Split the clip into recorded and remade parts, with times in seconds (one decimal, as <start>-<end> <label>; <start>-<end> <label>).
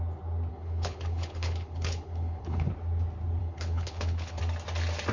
0.0-0.5 recorded; 0.5-2.7 remade; 2.7-3.4 recorded; 3.4-4.4 remade; 4.4-5.1 recorded